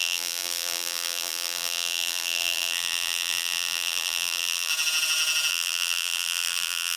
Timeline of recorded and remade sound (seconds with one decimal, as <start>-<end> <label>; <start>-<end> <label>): 0.0-4.7 remade; 4.7-5.5 recorded; 5.5-7.0 remade